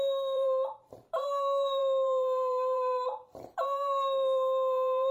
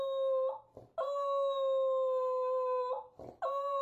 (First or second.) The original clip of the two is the second